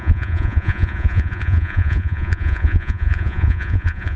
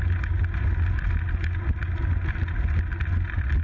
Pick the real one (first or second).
second